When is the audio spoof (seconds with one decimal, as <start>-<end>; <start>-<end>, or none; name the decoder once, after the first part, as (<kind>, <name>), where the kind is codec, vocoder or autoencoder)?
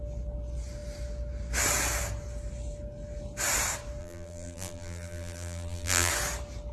4.0-6.1 (vocoder, BigVGAN v2)